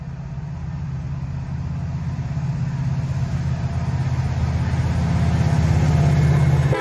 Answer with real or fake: real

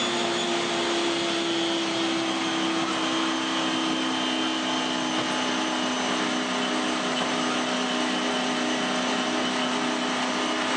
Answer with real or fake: real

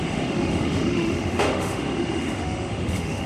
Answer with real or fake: fake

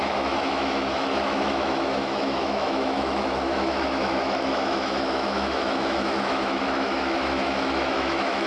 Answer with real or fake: fake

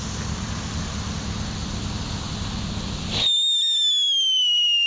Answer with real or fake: real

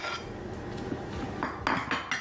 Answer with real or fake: real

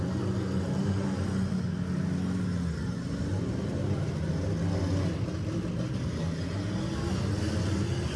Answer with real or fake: real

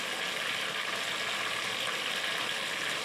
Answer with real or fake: real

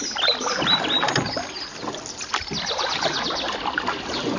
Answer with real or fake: real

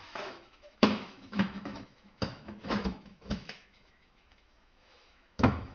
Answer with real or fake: fake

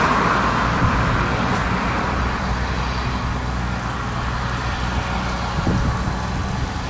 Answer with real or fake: real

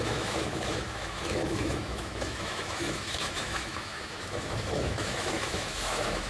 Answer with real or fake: fake